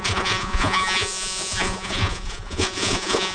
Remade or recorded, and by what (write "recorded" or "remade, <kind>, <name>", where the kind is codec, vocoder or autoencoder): remade, vocoder, Vocos